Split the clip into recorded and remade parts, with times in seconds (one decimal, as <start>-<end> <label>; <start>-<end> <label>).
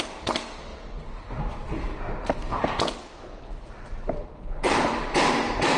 0.0-3.0 recorded; 3.0-3.6 remade; 3.6-4.3 recorded; 4.3-4.9 remade; 4.9-5.8 recorded